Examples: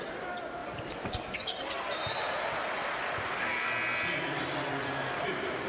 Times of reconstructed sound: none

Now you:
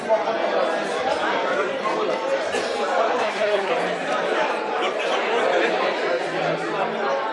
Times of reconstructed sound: 3.1-3.7 (codec, SNAC)

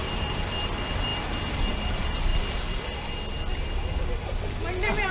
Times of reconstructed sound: none